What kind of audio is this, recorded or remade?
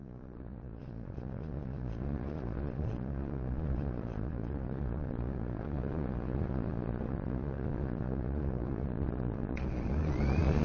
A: remade